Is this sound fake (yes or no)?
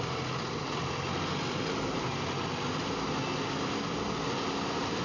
no